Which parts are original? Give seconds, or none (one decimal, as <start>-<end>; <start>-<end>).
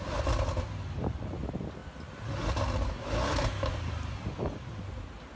0.0-5.4